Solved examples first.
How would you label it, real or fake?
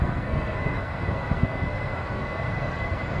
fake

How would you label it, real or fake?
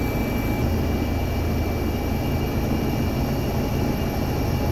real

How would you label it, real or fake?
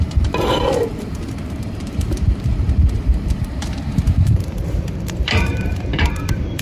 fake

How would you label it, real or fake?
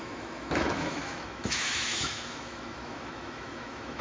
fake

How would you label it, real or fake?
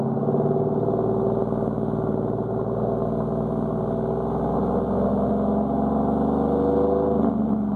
real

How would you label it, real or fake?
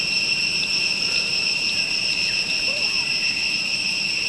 fake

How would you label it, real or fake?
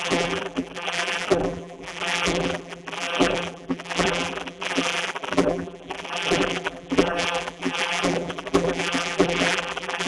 fake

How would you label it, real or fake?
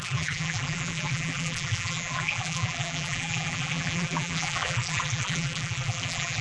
fake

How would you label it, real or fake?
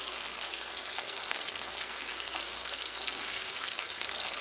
fake